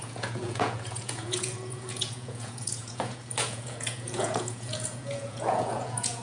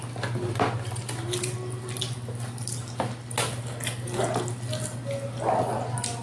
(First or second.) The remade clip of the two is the first